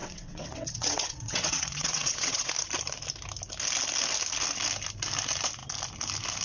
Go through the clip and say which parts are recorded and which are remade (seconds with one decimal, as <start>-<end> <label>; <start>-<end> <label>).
0.0-2.5 remade; 2.5-6.4 recorded